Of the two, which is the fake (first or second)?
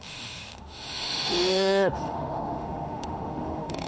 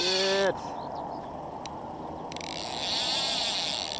first